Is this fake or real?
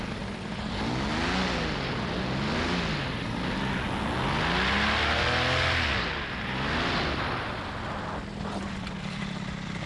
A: real